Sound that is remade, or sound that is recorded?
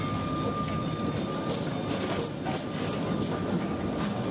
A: recorded